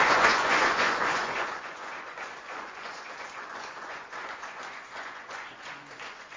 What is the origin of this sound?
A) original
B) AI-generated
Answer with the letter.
B